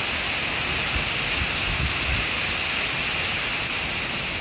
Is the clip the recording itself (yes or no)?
yes